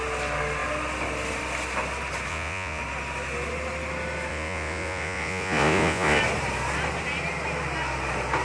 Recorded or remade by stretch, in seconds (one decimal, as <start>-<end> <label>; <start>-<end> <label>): 0.0-2.3 recorded; 2.3-2.8 remade; 2.8-4.3 recorded; 4.3-6.2 remade; 6.2-8.4 recorded